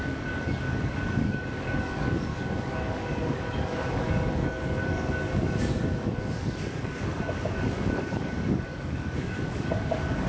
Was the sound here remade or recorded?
remade